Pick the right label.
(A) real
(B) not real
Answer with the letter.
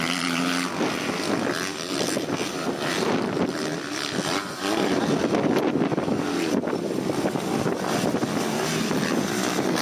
A